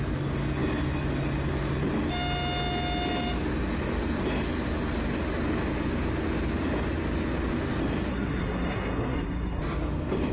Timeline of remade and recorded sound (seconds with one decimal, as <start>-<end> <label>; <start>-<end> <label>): 0.0-8.1 recorded; 8.1-9.6 remade; 9.6-10.3 recorded